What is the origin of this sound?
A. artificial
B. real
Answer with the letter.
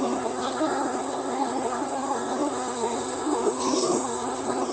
A